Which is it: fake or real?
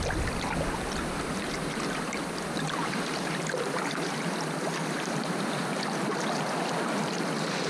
fake